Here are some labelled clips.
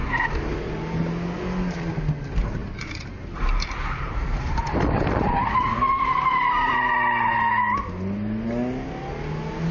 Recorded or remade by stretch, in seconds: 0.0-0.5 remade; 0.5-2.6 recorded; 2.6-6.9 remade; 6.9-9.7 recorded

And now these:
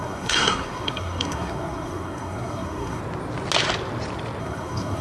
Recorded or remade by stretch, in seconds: 0.0-3.0 remade; 3.0-4.4 recorded; 4.4-5.0 remade

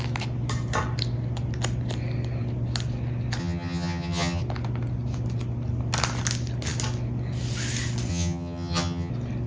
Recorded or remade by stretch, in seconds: 0.0-3.4 recorded; 3.4-4.4 remade; 4.4-8.1 recorded; 8.1-9.1 remade; 9.1-9.5 recorded

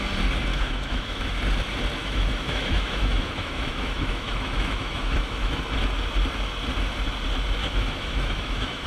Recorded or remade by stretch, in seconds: 0.0-0.5 recorded; 0.5-1.4 remade; 1.4-2.0 recorded; 2.0-5.6 remade; 5.6-7.6 recorded; 7.6-8.9 remade

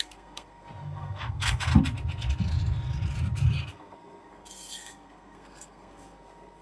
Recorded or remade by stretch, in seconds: 0.0-1.7 remade; 1.7-3.7 recorded; 3.7-6.6 remade